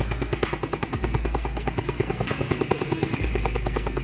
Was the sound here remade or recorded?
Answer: remade